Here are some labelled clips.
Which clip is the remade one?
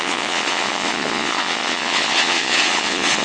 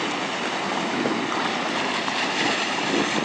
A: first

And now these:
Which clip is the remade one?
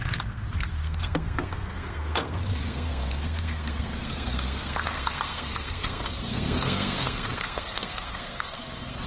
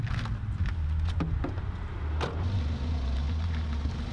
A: first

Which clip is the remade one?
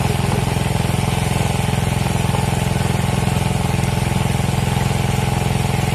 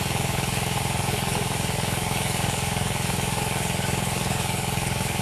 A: second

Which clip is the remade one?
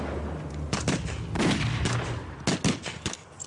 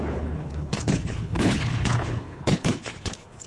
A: second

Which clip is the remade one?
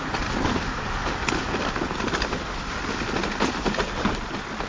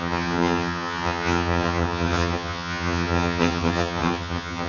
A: second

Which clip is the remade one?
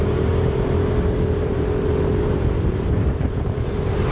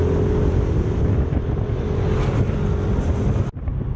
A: first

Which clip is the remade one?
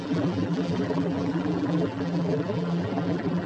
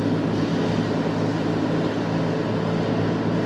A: first